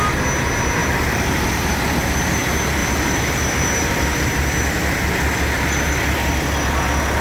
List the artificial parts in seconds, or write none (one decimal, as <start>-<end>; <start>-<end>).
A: 0.8-1.6; 2.8-4.3